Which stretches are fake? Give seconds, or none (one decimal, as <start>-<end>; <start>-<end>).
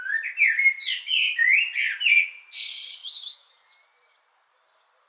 3.0-3.5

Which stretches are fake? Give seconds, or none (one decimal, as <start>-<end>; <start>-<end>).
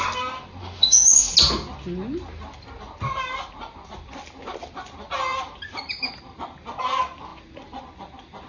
0.6-1.3